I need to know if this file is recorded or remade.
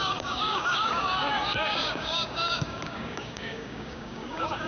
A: remade